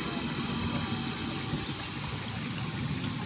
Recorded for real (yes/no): yes